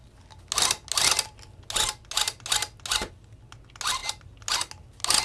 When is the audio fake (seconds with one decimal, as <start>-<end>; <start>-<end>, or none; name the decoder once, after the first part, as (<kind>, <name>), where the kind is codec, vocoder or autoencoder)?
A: none